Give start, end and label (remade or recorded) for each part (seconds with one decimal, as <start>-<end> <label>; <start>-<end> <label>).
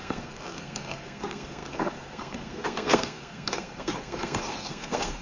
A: 0.0-5.2 remade